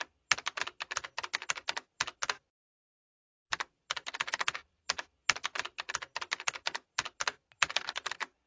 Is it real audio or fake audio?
real